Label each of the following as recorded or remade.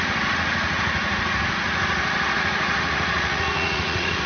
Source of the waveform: remade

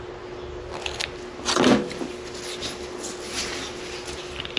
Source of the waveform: recorded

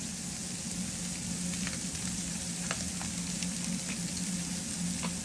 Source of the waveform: recorded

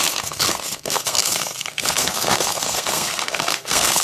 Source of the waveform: remade